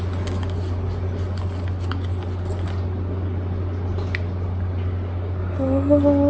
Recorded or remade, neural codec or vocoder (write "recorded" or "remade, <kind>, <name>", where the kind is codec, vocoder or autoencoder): recorded